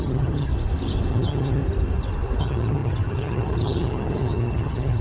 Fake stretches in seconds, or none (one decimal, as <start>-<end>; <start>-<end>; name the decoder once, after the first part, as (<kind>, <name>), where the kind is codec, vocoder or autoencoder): 0.0-0.5 (vocoder, HiFi-GAN); 1.1-1.6; 2.4-5.0